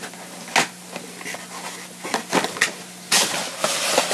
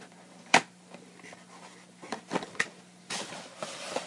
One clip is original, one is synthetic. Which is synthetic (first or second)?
second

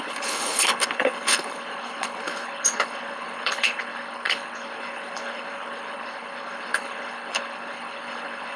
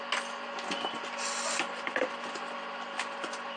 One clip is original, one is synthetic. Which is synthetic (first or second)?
first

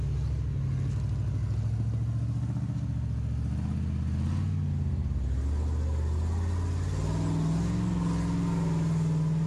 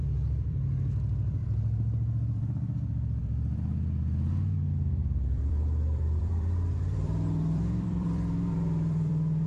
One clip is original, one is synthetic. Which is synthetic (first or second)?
second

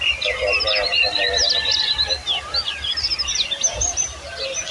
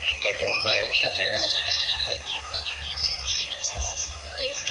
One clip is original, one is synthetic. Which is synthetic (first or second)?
second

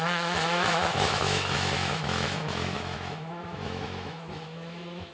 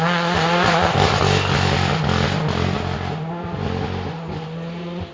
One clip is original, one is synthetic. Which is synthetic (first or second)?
first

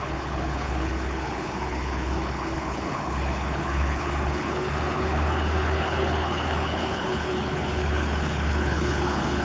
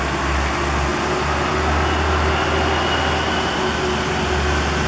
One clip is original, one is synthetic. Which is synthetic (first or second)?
first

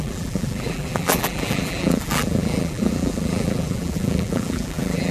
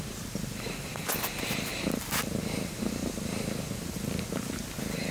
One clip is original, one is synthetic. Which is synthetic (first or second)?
first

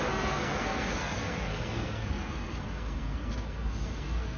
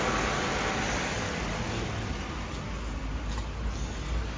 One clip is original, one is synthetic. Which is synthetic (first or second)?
first